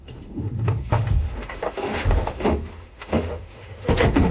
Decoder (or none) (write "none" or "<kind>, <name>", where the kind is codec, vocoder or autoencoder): autoencoder, DAC-VAE